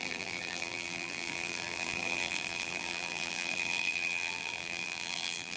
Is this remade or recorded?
remade